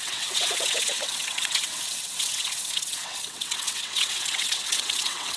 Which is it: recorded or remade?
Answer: remade